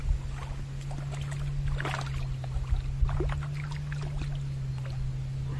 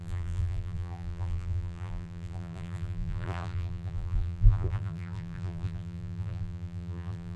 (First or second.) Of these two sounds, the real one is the first